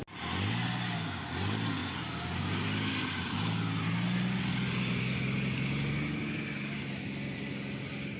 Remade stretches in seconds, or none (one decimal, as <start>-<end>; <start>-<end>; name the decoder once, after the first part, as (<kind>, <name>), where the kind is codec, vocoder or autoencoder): none

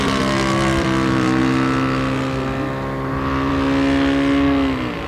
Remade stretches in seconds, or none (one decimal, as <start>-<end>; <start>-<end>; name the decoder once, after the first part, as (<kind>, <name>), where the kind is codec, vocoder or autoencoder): none

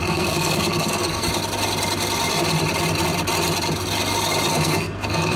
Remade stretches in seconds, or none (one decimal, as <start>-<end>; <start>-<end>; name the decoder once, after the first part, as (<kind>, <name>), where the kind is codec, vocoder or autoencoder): 0.0-1.3 (codec, SNAC); 4.5-5.4

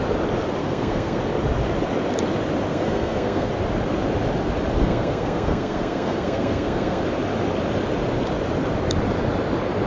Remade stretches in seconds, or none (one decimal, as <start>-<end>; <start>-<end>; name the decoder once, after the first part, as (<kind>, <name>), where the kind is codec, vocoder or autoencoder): 0.6-1.2 (codec, SNAC); 2.7-3.5; 4.8-7.0

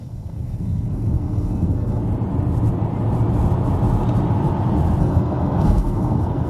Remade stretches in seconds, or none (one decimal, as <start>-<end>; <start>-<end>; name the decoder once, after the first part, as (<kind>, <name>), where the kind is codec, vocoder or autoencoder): 0.0-2.0 (codec, SNAC); 5.0-6.5